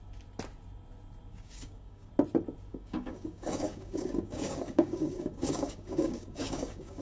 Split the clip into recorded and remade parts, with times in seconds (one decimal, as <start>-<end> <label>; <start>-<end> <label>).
0.0-1.3 recorded; 1.3-2.1 remade; 2.1-2.7 recorded; 2.7-7.0 remade